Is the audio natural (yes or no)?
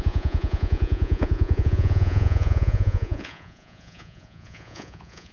no